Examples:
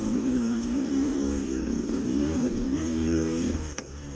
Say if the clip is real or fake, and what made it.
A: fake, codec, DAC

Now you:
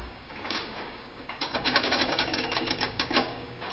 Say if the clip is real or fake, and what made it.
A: fake, codec, DAC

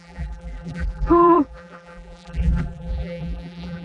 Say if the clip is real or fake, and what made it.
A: fake, vocoder, BigVGAN v2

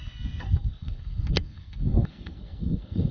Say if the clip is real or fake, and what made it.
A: fake, codec, SNAC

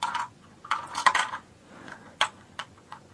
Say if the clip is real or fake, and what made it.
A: fake, vocoder, Vocos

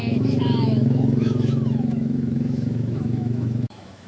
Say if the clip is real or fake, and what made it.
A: fake, autoencoder, DAC-VAE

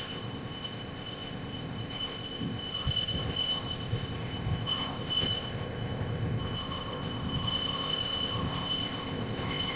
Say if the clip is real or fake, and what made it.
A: fake, codec, ZipCodec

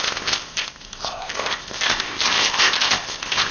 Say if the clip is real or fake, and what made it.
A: fake, codec, ZipCodec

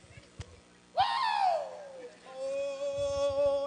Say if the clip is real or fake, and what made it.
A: real